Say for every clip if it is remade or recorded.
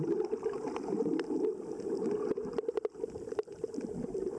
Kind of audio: remade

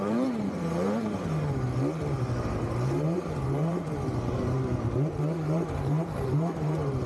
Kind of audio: remade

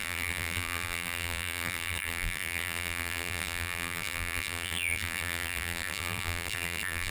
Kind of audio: remade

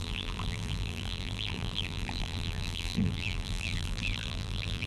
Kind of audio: remade